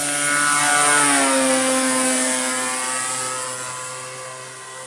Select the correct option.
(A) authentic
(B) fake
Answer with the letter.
A